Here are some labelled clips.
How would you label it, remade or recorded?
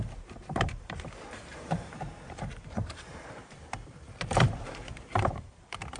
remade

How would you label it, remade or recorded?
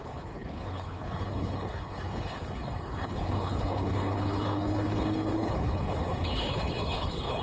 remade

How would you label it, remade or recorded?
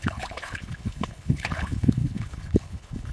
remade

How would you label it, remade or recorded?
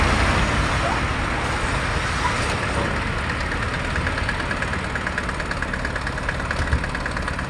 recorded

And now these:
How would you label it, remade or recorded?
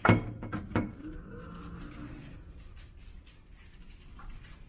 recorded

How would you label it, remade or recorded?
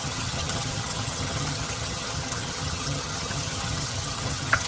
remade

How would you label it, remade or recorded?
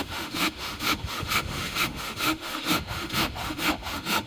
remade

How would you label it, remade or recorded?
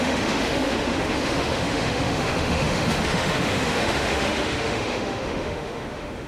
remade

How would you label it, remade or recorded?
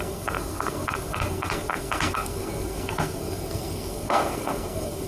remade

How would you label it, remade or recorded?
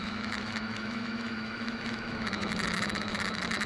remade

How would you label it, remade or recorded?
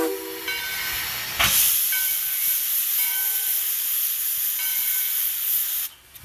recorded